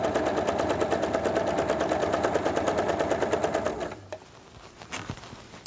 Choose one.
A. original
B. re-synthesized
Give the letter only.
A